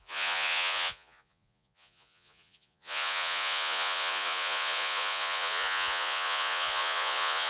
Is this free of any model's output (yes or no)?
no